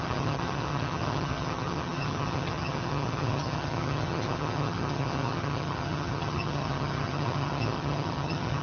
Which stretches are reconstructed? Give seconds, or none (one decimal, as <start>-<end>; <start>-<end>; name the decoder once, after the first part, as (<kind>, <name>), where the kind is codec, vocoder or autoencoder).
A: 0.0-8.6 (vocoder, HiFi-GAN)